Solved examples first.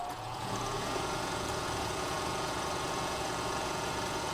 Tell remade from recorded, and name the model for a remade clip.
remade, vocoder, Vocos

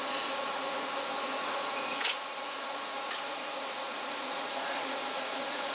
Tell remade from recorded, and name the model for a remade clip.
remade, vocoder, Vocos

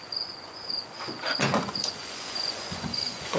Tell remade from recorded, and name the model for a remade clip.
remade, vocoder, Vocos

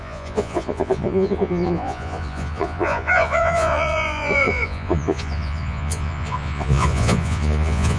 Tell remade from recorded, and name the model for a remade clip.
remade, vocoder, Vocos